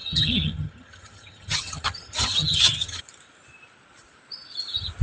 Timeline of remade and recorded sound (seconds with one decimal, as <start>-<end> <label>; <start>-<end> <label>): 0.0-3.0 remade; 3.0-5.0 recorded